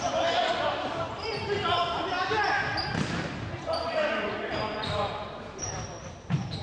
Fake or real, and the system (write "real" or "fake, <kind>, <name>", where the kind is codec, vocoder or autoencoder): fake, vocoder, BigVGAN v2